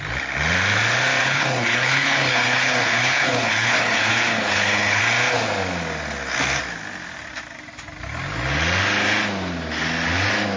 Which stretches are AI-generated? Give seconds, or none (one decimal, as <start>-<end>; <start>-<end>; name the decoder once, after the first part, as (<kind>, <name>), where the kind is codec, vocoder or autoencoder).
1.2-5.0 (codec, HILCodec)